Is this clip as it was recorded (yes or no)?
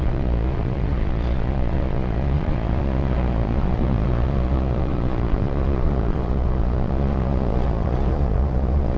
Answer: no